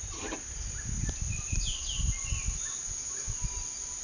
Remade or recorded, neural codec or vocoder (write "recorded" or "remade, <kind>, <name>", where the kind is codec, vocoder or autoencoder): recorded